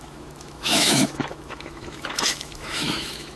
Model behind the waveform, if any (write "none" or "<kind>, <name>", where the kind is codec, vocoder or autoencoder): autoencoder, DAC-VAE